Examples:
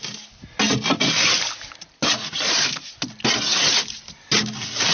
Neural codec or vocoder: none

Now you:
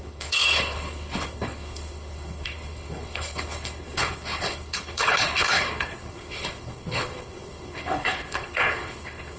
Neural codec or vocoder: codec, HILCodec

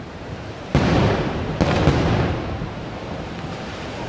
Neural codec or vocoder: vocoder, BigVGAN v2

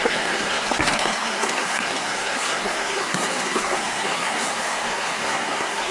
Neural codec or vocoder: codec, SNAC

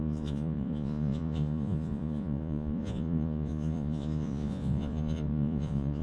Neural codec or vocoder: vocoder, Vocos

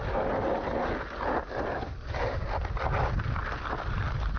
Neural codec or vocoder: none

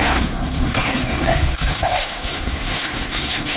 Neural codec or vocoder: codec, SNAC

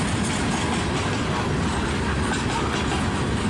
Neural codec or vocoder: none